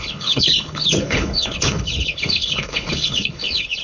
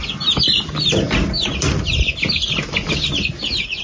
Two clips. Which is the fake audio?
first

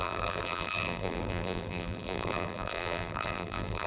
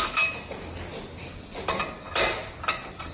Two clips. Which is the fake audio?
first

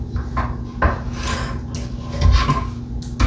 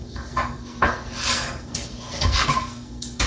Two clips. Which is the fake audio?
second